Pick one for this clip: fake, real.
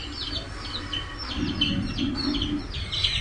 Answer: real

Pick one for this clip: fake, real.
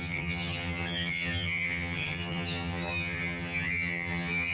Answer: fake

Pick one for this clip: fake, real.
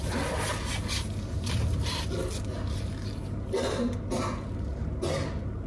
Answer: real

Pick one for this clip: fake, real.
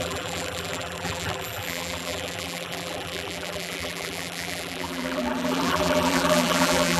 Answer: fake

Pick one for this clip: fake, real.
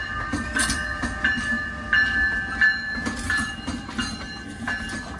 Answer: real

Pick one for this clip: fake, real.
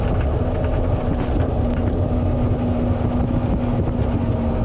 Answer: real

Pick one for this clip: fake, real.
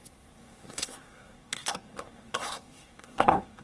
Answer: fake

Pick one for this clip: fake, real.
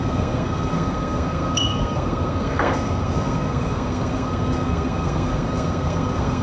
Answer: fake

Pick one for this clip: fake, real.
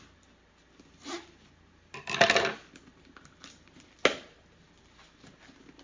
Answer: real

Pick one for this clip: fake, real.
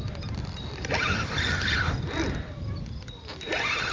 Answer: real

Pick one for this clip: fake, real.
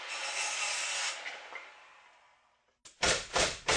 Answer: real